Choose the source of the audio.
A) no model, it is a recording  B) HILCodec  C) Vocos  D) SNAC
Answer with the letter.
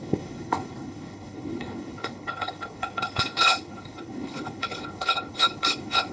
B